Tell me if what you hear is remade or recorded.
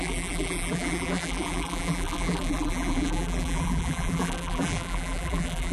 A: remade